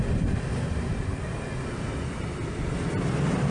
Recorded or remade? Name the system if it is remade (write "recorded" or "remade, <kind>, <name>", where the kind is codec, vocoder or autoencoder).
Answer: recorded